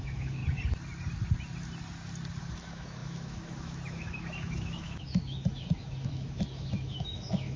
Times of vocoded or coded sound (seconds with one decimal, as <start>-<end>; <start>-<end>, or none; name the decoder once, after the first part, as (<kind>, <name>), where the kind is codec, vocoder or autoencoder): 0.0-0.4 (autoencoder, DAC-VAE); 2.4-7.6